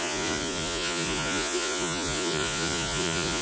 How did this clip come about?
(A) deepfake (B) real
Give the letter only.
A